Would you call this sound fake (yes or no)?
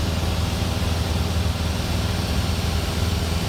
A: no